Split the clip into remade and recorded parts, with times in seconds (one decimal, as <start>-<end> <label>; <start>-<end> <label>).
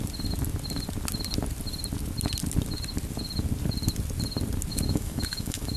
0.0-4.7 recorded; 4.7-5.8 remade